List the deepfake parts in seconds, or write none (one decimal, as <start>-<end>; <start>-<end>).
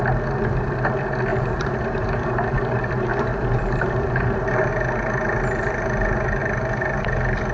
1.3-4.7